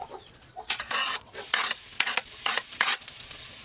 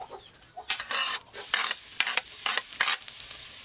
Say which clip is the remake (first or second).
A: first